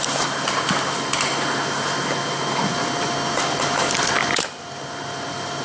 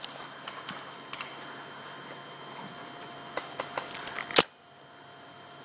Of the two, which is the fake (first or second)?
first